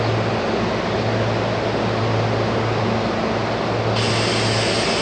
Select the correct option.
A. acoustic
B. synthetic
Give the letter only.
A